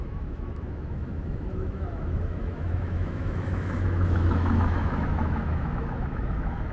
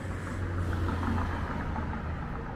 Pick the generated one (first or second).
first